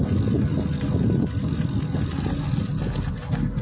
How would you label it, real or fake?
real